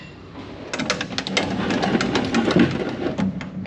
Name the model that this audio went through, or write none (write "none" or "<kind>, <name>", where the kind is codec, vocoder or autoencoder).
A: none